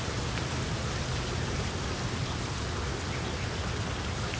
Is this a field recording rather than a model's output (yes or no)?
yes